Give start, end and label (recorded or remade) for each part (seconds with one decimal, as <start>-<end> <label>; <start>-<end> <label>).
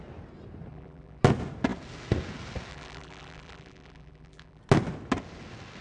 0.0-0.7 recorded; 0.7-1.2 remade; 1.2-2.7 recorded; 2.7-4.6 remade; 4.6-5.8 recorded